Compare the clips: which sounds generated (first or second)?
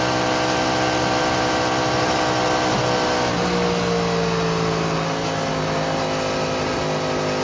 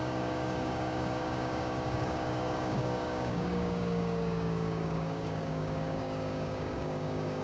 second